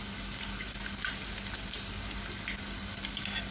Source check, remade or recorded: recorded